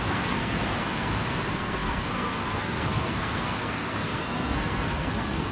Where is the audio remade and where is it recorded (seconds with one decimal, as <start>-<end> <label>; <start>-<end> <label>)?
0.0-5.5 remade